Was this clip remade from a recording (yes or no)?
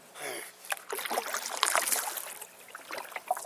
no